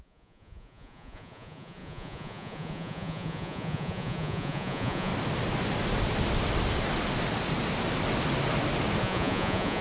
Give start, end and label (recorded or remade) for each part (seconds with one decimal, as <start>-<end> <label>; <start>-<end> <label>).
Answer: 0.0-5.1 remade; 5.1-9.0 recorded; 9.0-9.8 remade